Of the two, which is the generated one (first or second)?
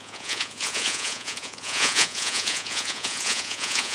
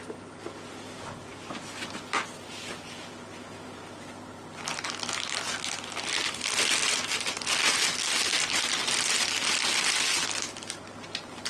first